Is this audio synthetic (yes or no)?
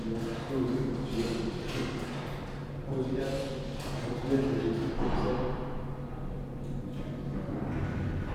no